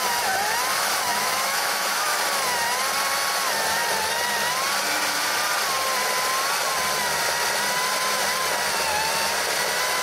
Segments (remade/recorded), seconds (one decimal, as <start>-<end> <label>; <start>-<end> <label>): 0.0-0.7 recorded; 0.7-2.2 remade; 2.2-10.0 recorded